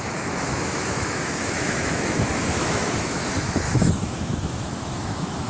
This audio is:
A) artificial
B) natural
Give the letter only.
A